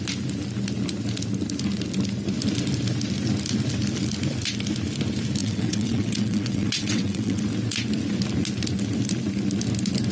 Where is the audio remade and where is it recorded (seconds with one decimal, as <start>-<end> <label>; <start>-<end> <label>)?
0.0-5.4 recorded; 5.4-7.4 remade; 7.4-10.1 recorded